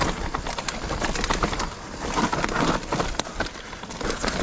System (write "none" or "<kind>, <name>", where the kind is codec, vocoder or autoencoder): none